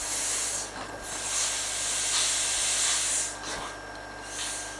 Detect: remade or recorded recorded